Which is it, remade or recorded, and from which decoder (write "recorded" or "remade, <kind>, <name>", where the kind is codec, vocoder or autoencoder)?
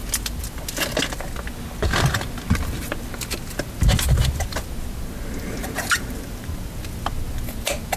recorded